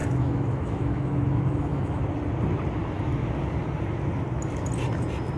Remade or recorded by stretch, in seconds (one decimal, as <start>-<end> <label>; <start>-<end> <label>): 0.0-2.0 remade; 2.0-5.4 recorded

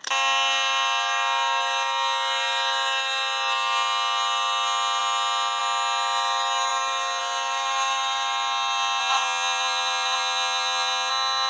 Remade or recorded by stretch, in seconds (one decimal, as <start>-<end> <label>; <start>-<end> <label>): 0.0-9.0 recorded; 9.0-11.1 remade; 11.1-11.5 recorded